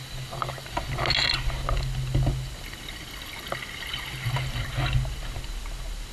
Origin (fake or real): real